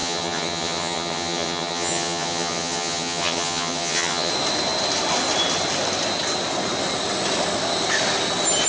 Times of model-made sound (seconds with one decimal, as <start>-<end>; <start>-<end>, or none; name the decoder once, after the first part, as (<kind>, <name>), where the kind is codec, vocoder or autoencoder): 0.0-4.3 (vocoder, HiFi-GAN)